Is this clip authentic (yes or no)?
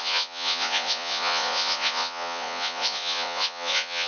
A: no